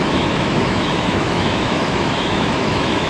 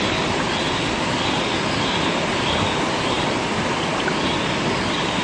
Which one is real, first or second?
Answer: second